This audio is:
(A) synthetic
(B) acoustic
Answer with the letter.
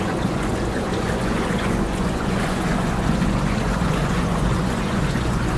A